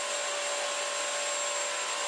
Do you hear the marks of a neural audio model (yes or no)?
no